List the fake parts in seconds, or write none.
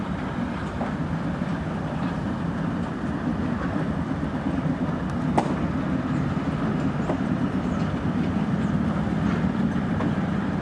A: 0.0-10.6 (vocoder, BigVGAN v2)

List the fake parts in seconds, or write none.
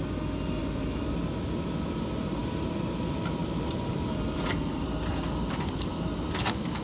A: 0.6-1.1 (vocoder, BigVGAN v2); 3.4-6.3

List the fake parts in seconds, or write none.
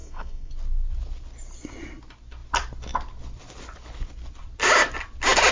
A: 0.0-0.5 (codec, SNAC)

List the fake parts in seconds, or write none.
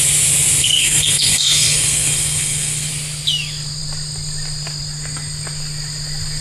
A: 0.6-2.9 (codec, SNAC)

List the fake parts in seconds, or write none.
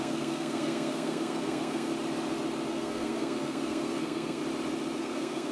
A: 0.0-1.9 (codec, SNAC); 2.7-4.4; 5.0-5.5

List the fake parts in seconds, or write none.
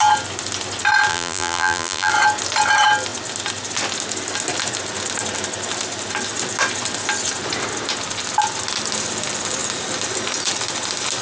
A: 1.1-2.1 (vocoder, BigVGAN v2)